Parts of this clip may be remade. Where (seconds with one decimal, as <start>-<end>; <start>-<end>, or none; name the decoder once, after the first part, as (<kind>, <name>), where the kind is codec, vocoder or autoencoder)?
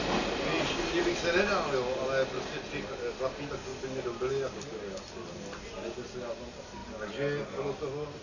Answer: none